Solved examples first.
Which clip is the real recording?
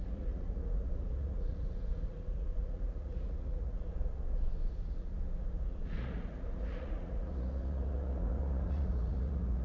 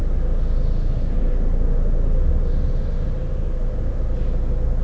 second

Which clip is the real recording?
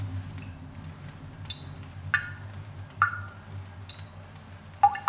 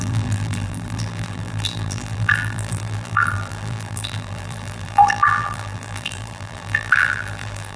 first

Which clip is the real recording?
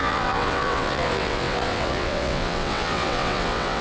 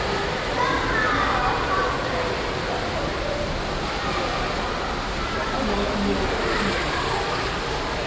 second